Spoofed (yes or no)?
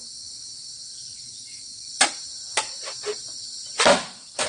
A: no